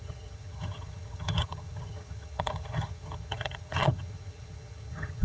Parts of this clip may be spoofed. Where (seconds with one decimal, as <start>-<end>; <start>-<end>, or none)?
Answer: 0.0-5.2